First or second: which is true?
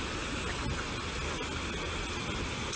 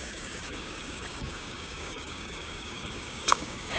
first